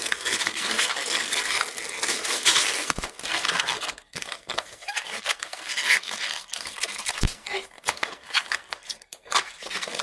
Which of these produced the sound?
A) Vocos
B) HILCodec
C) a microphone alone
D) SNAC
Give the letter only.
D